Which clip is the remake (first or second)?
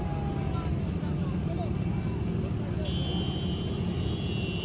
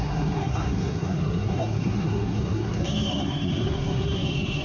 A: second